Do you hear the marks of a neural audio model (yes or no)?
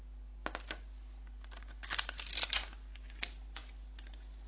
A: no